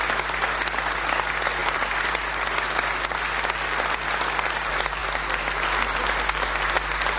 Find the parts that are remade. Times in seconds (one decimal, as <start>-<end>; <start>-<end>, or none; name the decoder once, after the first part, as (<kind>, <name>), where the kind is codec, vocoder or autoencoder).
1.6-2.1 (vocoder, BigVGAN v2)